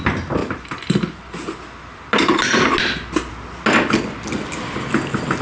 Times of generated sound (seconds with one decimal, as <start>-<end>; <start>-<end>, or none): none